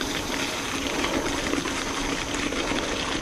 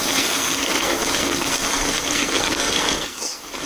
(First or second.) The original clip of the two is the first